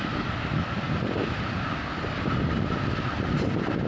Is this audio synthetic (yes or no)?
no